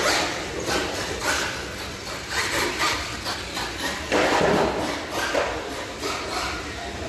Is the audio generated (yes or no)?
no